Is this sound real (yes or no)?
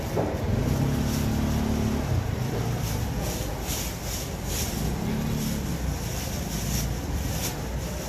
yes